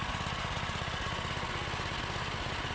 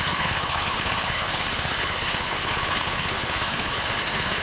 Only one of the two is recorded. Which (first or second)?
first